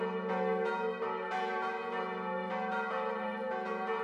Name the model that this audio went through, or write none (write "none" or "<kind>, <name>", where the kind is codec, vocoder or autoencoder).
none